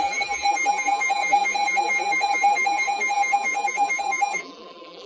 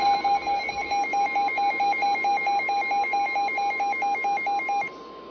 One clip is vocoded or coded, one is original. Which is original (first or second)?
second